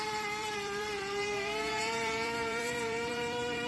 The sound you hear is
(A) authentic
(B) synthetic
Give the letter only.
B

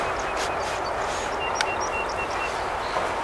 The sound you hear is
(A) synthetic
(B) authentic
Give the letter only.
B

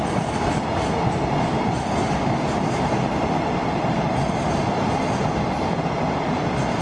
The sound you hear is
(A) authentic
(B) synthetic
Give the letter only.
A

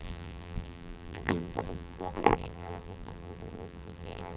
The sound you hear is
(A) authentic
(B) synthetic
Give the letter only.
B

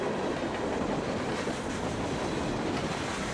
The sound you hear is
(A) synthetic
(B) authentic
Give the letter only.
B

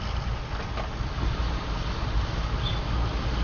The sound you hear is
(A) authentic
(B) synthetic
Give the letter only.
A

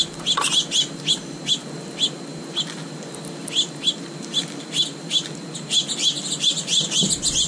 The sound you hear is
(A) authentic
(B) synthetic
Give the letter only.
A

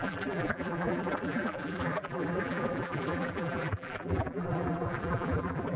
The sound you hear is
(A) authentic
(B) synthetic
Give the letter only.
B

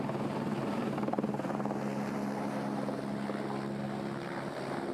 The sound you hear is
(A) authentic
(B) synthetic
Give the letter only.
A